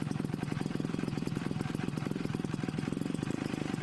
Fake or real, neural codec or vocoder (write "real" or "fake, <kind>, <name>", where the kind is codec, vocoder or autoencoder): real